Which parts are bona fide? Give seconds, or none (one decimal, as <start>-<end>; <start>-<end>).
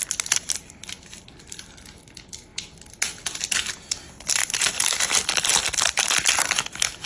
0.0-4.4; 6.0-7.1